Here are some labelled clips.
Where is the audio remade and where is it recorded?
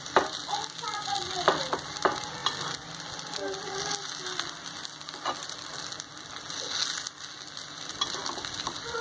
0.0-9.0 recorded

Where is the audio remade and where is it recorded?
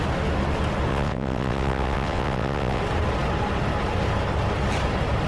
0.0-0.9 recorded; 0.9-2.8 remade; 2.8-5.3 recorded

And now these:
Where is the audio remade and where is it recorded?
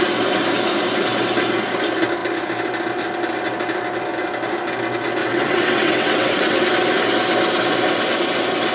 0.0-5.2 recorded; 5.2-6.7 remade; 6.7-8.7 recorded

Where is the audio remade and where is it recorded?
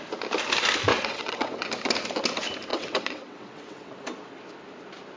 0.0-0.9 recorded; 0.9-1.7 remade; 1.7-2.7 recorded; 2.7-3.9 remade; 3.9-5.2 recorded